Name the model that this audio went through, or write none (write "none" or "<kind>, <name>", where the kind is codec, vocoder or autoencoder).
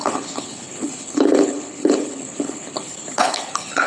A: codec, HILCodec